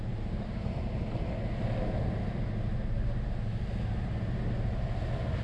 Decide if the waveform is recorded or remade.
recorded